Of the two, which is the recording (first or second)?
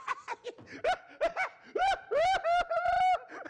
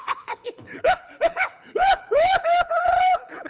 first